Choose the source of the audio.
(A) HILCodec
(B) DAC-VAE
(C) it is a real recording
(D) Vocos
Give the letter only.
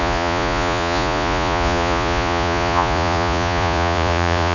D